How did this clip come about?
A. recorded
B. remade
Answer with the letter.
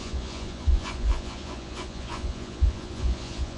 B